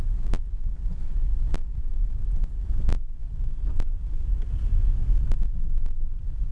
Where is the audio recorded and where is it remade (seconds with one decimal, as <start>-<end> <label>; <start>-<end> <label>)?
0.0-5.5 remade; 5.5-6.5 recorded